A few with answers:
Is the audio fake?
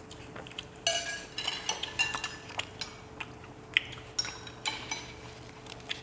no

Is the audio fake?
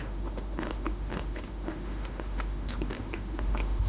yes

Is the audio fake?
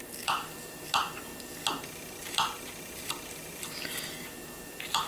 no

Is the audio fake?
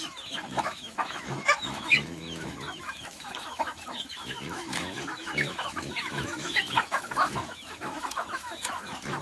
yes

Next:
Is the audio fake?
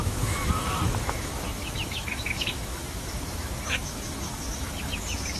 yes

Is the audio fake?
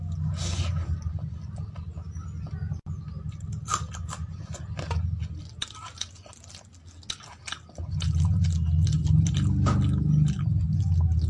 no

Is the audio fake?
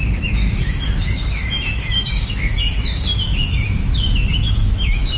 yes